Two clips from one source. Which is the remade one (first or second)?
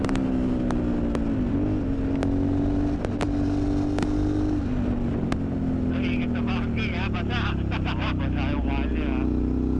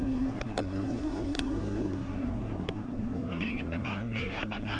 second